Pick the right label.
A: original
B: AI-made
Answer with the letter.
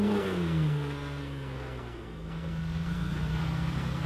B